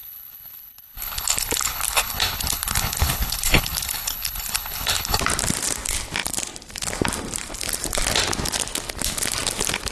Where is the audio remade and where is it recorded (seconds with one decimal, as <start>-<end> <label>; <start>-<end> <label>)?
0.0-5.2 remade; 5.2-9.9 recorded

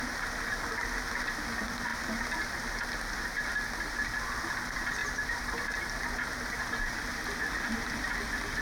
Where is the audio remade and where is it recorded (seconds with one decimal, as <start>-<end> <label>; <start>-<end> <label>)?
0.0-5.0 recorded; 5.0-5.7 remade; 5.7-8.6 recorded

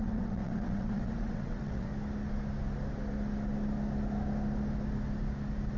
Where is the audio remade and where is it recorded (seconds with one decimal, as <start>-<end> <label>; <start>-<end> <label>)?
0.0-1.9 remade; 1.9-5.8 recorded

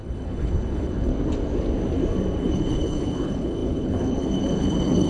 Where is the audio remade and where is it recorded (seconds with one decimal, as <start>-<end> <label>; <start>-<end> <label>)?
0.0-1.1 remade; 1.1-2.4 recorded; 2.4-5.1 remade